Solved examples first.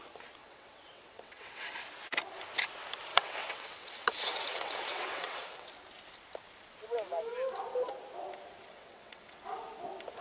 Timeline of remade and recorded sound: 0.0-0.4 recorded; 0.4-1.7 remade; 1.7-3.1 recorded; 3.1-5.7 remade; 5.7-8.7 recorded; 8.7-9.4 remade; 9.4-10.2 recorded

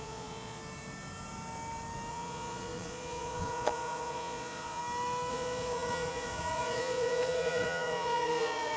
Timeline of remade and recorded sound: 0.0-0.6 remade; 0.6-2.1 recorded; 2.1-4.8 remade; 4.8-5.3 recorded; 5.3-8.8 remade

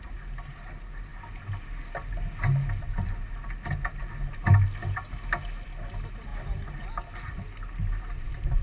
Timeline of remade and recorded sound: 0.0-8.6 recorded

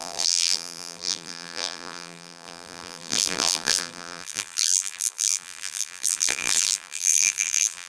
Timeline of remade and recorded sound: 0.0-7.9 remade

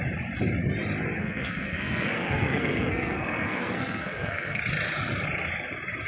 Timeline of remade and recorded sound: 0.0-1.2 recorded; 1.2-4.6 remade; 4.6-6.1 recorded

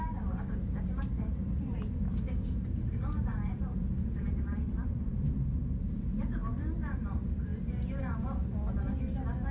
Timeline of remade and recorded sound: 0.0-1.4 remade; 1.4-2.6 recorded; 2.6-7.5 remade; 7.5-8.0 recorded; 8.0-8.4 remade; 8.4-9.5 recorded

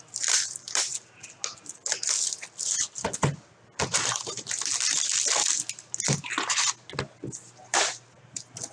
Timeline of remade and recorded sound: 0.0-8.7 recorded